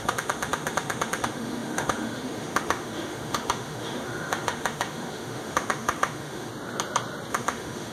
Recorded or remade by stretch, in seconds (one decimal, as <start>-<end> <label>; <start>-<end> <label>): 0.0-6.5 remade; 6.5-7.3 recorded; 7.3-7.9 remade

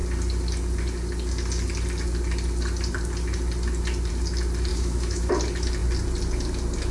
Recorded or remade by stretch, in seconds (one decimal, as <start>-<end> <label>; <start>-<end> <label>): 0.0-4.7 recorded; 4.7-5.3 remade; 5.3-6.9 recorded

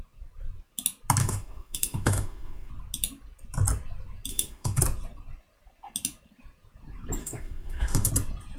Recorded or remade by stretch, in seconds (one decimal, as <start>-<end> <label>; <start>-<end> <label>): 0.0-1.2 recorded; 1.2-2.7 remade; 2.7-4.3 recorded; 4.3-4.8 remade; 4.8-7.2 recorded; 7.2-8.1 remade; 8.1-8.6 recorded